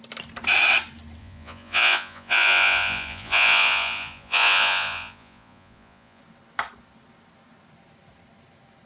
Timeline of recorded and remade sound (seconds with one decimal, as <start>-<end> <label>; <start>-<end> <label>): 0.0-1.2 recorded; 1.2-6.2 remade; 6.2-8.9 recorded